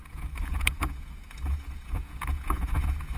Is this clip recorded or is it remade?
remade